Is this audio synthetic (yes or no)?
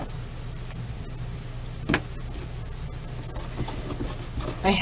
no